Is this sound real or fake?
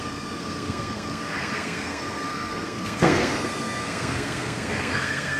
fake